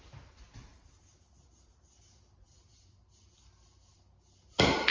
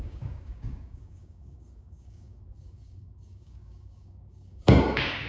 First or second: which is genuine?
first